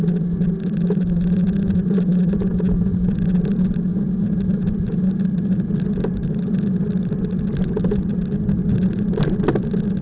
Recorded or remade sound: recorded